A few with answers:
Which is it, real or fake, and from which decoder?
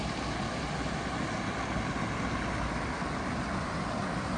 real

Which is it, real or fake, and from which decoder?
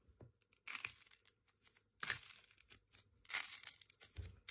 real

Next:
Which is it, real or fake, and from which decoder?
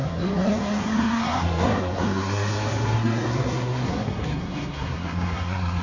fake, codec, SNAC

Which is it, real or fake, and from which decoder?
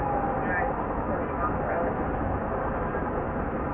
real